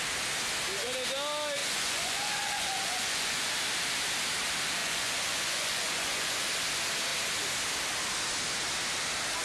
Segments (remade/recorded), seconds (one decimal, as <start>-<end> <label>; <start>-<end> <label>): 0.0-1.6 recorded; 1.6-3.5 remade; 3.5-4.8 recorded; 4.8-6.4 remade; 6.4-9.4 recorded